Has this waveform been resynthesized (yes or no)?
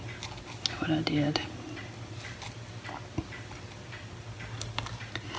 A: no